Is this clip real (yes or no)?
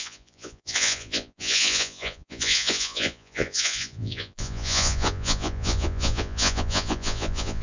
no